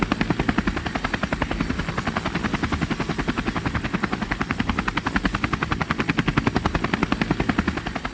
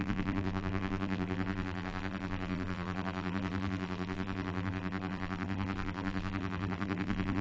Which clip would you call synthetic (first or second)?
second